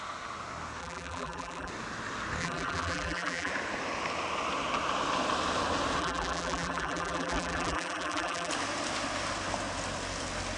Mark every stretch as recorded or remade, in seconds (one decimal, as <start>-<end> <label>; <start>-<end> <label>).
0.0-0.8 recorded; 0.8-1.7 remade; 1.7-2.4 recorded; 2.4-3.5 remade; 3.5-6.0 recorded; 6.0-8.5 remade; 8.5-10.6 recorded